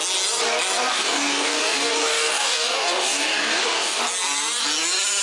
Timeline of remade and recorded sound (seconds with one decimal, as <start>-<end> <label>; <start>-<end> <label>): 0.0-0.9 recorded; 0.9-4.0 remade; 4.0-5.2 recorded